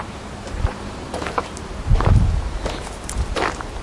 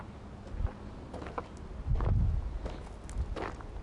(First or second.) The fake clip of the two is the first